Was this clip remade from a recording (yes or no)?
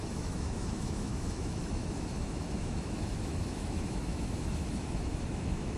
yes